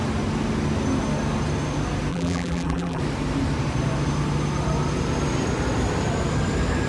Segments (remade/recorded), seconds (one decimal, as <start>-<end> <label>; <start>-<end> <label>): 0.0-2.1 recorded; 2.1-3.0 remade; 3.0-6.9 recorded